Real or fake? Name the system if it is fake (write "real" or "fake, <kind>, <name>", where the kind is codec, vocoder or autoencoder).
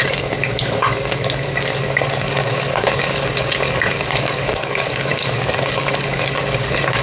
fake, codec, DAC